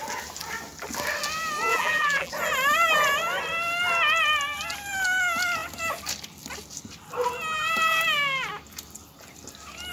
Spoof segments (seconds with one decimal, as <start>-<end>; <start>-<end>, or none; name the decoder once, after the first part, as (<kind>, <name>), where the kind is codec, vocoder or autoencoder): 1.7-2.3 (vocoder, BigVGAN v2)